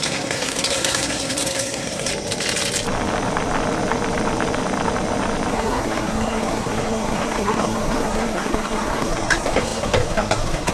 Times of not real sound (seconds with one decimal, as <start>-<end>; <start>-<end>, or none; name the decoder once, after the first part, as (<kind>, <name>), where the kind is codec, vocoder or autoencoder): 0.0-2.1 (codec, SNAC); 5.5-10.7

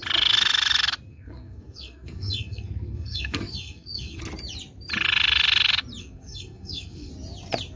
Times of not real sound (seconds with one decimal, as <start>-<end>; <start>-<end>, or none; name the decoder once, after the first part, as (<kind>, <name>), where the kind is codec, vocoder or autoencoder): 1.1-4.2 (codec, SNAC); 6.0-7.1

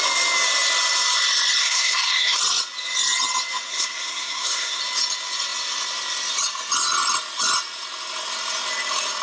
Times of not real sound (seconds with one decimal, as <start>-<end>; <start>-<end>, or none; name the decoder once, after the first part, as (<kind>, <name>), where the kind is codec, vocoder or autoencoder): 1.6-2.4 (codec, SNAC); 3.7-4.8

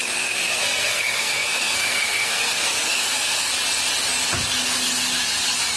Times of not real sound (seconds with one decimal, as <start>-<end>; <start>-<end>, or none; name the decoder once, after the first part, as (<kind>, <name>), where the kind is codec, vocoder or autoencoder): 0.0-3.5 (codec, SNAC)

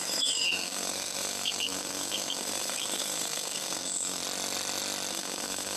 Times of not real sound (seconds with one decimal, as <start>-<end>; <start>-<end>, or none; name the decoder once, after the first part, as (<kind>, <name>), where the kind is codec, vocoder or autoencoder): 0.0-4.2 (codec, SNAC); 5.1-5.8

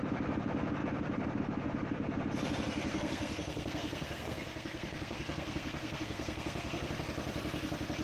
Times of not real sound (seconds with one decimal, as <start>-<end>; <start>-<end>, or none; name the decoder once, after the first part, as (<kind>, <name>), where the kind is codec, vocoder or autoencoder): 2.9-6.9 (codec, SNAC)

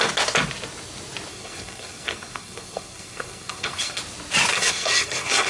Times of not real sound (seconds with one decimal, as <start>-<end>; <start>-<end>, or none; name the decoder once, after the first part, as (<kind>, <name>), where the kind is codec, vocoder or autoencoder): 1.3-4.0 (codec, SNAC); 4.5-5.5